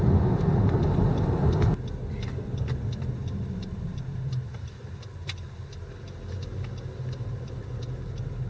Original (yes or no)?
yes